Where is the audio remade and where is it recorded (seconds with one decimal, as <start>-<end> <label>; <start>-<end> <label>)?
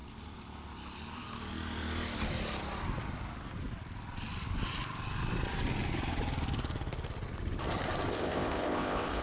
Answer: 0.0-8.1 recorded; 8.1-9.2 remade